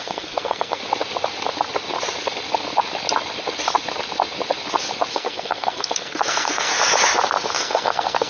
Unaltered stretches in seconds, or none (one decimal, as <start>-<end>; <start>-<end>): 0.8-5.1; 6.7-7.5